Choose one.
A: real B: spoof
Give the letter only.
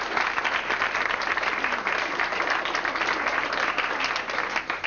A